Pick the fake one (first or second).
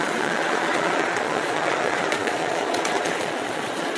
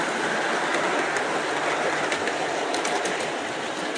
first